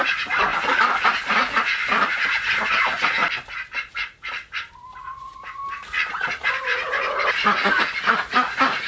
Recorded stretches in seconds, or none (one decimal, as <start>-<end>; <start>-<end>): 0.5-2.7; 3.2-5.0; 5.6-6.1

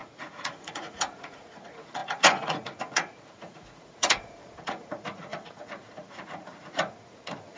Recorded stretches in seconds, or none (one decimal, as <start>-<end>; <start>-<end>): none